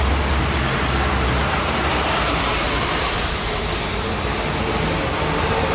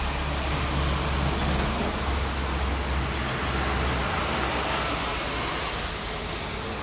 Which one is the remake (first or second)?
first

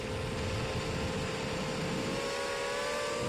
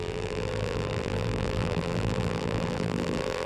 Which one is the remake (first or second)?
second